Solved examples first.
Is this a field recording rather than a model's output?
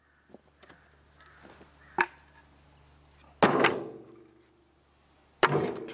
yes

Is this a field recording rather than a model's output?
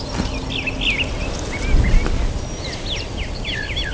yes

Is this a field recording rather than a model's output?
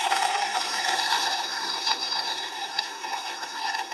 no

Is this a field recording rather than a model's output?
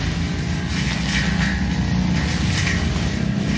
yes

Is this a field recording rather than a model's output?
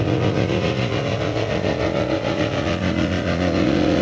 no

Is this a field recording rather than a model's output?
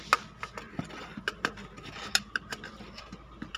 yes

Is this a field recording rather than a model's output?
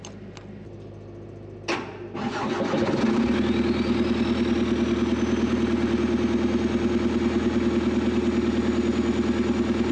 yes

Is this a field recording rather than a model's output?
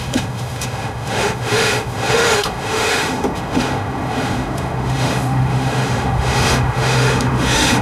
no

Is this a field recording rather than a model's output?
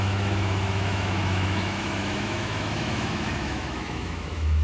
no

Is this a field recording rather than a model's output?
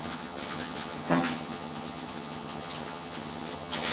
no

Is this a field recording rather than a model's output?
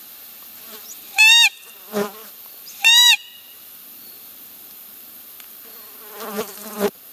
no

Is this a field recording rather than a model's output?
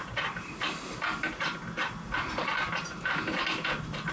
yes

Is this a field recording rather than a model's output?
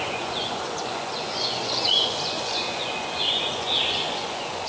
no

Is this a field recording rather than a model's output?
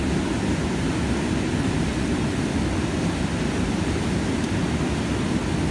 yes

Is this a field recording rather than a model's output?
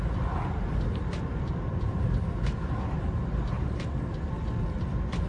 yes